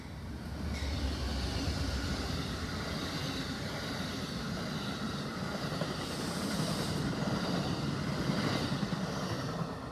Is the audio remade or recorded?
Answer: recorded